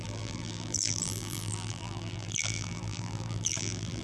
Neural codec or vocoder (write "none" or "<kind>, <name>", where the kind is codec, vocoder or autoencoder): vocoder, BigVGAN v2